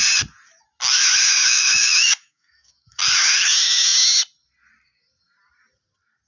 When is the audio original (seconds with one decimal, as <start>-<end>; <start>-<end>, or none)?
0.0-1.4; 3.0-6.3